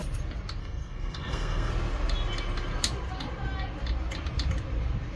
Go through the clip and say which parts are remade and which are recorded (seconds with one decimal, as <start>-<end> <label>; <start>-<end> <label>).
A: 0.0-0.6 recorded; 0.6-1.7 remade; 1.7-5.2 recorded